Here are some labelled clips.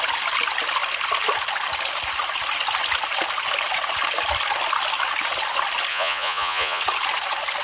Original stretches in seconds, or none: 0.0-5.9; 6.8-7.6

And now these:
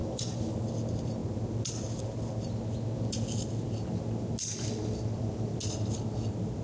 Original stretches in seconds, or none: 0.5-6.6

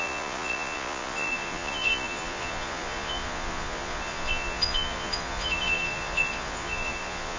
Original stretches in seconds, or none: none

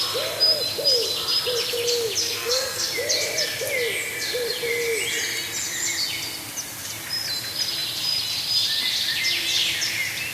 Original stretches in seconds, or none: 0.0-2.2; 2.9-10.3

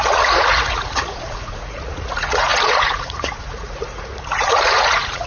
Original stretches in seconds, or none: none

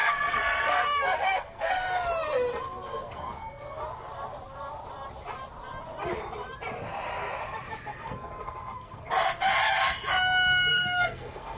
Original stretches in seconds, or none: 1.7-2.5; 3.8-7.9; 9.1-10.7

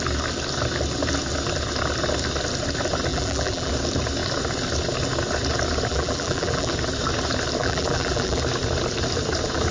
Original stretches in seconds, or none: 0.0-3.1; 3.7-5.9; 6.7-7.6; 8.4-9.7